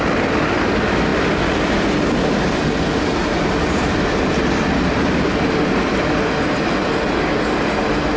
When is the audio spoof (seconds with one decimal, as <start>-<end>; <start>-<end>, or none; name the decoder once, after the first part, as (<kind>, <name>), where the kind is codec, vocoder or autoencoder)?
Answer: none